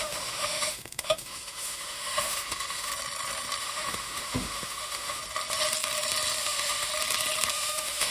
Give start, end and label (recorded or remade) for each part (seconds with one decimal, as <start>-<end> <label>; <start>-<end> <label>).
0.0-2.9 remade; 2.9-3.6 recorded; 3.6-5.2 remade; 5.2-6.4 recorded; 6.4-6.9 remade; 6.9-7.5 recorded; 7.5-8.1 remade